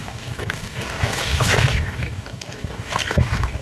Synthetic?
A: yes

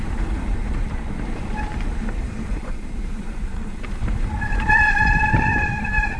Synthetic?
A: yes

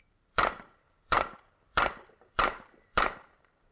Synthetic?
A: yes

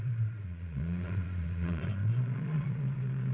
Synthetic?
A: yes